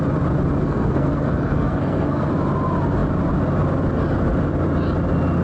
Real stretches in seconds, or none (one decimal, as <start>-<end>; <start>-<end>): 0.0-0.6; 2.3-5.4